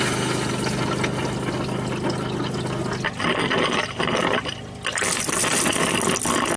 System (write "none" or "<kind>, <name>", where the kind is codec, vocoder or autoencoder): none